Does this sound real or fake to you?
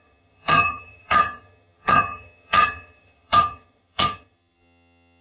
fake